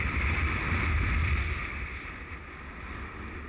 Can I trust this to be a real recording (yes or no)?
no